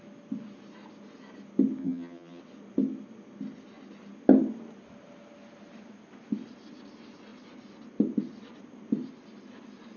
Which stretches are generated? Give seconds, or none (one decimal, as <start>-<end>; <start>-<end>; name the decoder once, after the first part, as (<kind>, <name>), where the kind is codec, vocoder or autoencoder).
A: 1.8-2.4 (vocoder, HiFi-GAN)